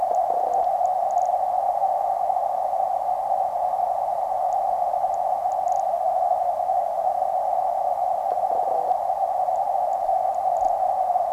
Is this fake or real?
real